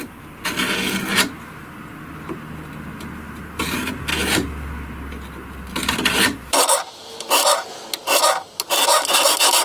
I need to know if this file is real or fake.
real